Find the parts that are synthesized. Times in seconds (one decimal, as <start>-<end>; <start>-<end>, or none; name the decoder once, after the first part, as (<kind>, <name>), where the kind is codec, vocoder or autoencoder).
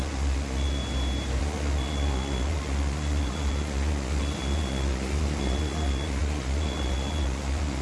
0.0-0.8 (vocoder, Vocos); 1.4-7.8